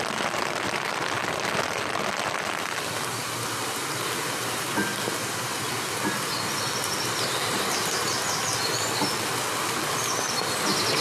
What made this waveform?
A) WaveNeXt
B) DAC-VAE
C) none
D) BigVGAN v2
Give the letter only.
C